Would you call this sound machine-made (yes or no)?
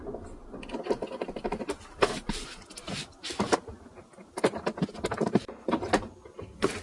no